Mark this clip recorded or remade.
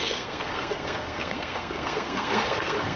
remade